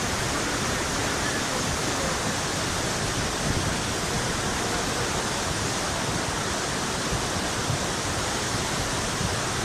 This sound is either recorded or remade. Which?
recorded